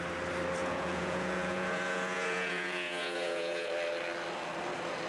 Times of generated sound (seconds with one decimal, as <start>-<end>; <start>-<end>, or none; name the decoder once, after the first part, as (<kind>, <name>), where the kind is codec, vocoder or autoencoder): 0.6-3.7 (vocoder, Vocos)